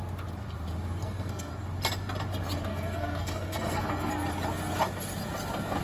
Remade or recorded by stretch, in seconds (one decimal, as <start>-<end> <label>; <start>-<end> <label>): 0.0-1.0 recorded; 1.0-1.5 remade; 1.5-2.7 recorded; 2.7-4.1 remade; 4.1-5.8 recorded